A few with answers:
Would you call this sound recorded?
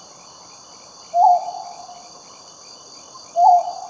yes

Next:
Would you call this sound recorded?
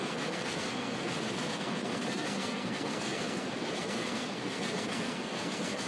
no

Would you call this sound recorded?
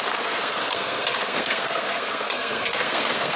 no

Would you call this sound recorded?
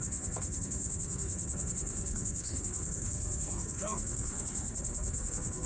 no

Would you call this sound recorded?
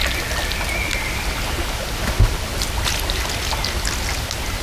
yes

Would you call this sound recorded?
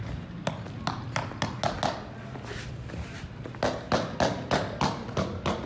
yes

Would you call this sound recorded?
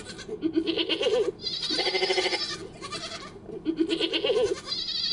yes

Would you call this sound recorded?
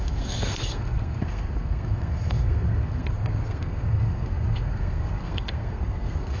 no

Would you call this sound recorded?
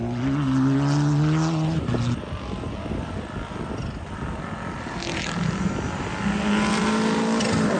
yes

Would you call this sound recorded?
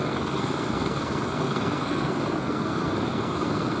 no